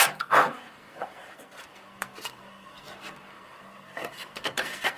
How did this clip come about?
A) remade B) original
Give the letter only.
A